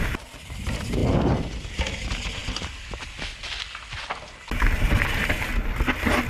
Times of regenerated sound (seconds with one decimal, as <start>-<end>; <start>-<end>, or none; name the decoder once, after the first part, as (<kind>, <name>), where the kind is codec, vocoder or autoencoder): none